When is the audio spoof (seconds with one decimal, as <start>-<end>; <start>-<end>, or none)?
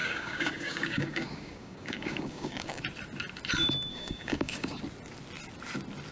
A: 0.0-2.8; 3.9-4.8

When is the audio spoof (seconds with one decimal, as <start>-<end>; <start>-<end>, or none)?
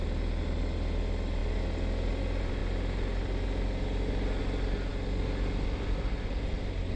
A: none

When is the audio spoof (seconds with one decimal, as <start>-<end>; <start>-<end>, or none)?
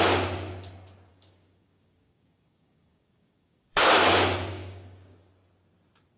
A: 1.1-3.9; 4.5-5.3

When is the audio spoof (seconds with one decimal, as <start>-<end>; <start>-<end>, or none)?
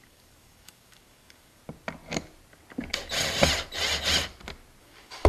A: 0.0-1.6; 4.8-5.3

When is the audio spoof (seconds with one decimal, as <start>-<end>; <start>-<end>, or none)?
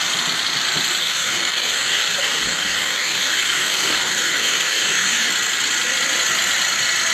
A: 1.0-5.3